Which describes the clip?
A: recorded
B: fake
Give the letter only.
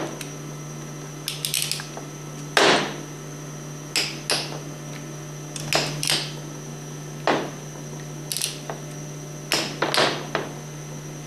A